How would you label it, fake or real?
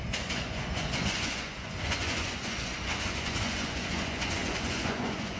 fake